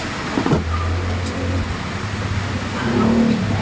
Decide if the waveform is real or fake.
real